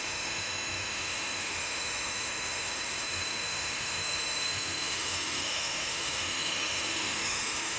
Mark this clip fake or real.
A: fake